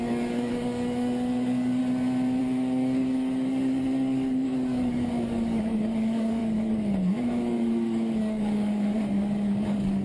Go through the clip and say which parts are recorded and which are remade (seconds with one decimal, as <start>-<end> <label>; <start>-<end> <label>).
0.0-1.8 remade; 1.8-2.4 recorded; 2.4-10.0 remade

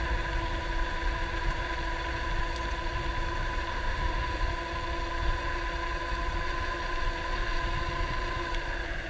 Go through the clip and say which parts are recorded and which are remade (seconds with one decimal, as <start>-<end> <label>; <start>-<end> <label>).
0.0-3.7 recorded; 3.7-4.5 remade; 4.5-9.1 recorded

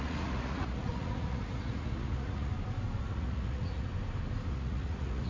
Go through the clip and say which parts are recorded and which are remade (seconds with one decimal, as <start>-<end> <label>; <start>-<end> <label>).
0.0-2.5 remade; 2.5-3.0 recorded; 3.0-3.9 remade; 3.9-4.5 recorded; 4.5-5.3 remade

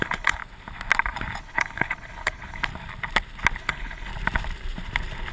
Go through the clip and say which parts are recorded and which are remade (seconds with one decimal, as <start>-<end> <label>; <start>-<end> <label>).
0.0-0.4 remade; 0.4-1.4 recorded; 1.4-2.7 remade; 2.7-3.6 recorded; 3.6-4.1 remade; 4.1-5.3 recorded

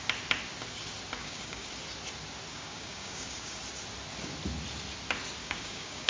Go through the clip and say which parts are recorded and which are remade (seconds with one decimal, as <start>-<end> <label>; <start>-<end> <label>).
0.0-1.2 recorded; 1.2-1.7 remade; 1.7-2.5 recorded; 2.5-3.6 remade; 3.6-5.4 recorded; 5.4-6.1 remade